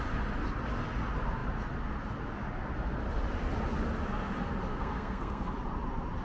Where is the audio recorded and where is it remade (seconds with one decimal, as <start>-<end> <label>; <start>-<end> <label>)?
0.0-4.7 recorded; 4.7-5.5 remade; 5.5-6.2 recorded